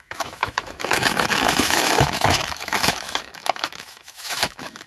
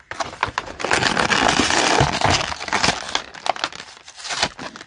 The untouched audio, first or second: second